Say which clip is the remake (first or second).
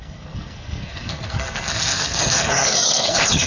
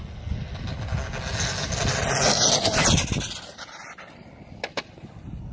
first